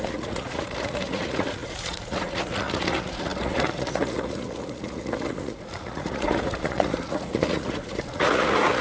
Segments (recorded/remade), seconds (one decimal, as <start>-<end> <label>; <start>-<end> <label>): 0.0-8.8 remade